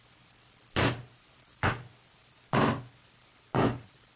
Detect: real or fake real